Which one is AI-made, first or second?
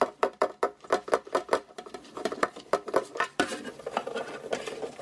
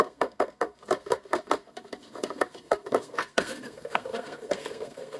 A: second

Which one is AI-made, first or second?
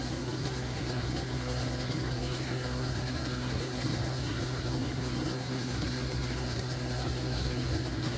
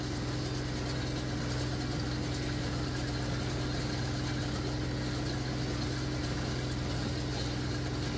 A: first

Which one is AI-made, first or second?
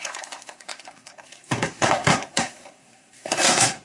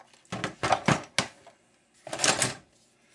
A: first